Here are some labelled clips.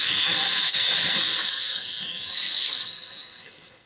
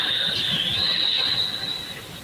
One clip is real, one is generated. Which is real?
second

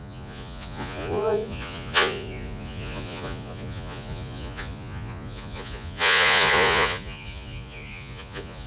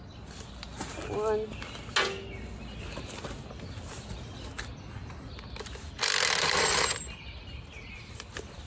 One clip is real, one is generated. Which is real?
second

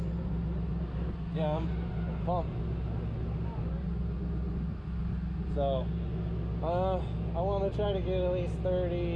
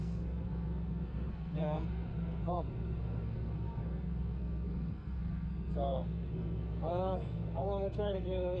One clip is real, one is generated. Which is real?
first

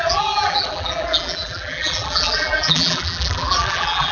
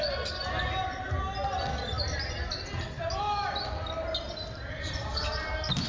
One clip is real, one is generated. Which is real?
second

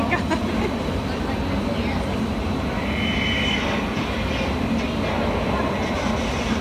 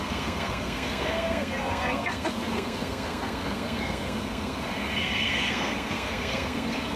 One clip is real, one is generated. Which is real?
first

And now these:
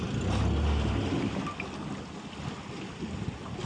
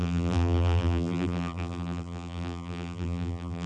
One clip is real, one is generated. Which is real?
first